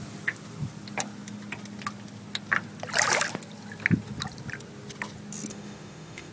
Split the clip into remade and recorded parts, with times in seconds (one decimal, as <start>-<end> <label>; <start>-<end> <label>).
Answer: 0.0-5.5 recorded; 5.5-6.3 remade